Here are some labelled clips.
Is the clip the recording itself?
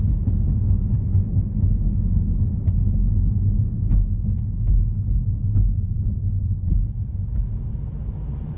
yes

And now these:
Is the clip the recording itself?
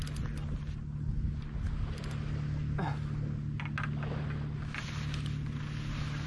yes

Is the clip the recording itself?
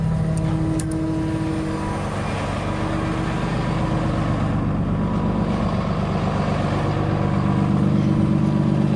yes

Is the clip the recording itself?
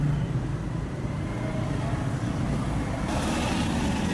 yes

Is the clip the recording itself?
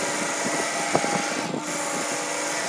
yes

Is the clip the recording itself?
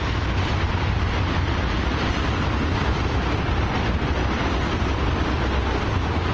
yes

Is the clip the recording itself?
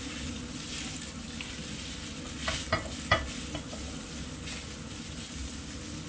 yes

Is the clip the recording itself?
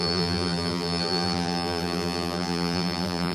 no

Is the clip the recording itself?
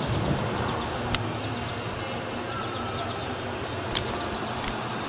yes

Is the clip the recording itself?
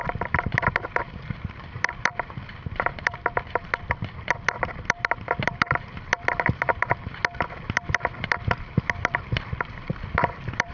no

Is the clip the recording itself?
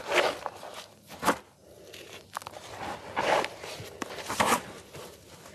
no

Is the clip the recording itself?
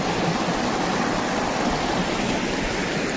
yes